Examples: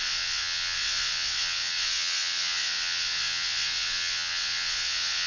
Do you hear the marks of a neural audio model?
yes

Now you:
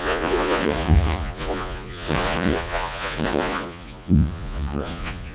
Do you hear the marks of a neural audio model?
yes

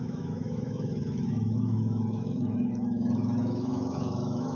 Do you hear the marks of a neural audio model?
yes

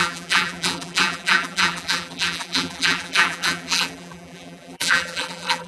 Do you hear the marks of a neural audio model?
yes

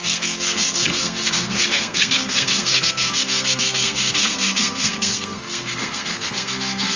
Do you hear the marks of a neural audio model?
yes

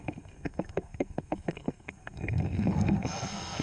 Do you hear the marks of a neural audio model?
yes